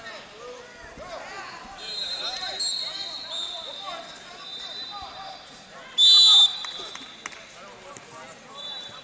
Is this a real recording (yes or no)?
yes